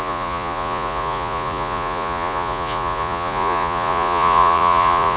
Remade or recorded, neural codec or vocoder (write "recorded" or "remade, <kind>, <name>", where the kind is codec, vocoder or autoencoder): remade, vocoder, Vocos